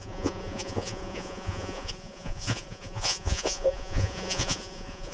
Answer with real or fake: fake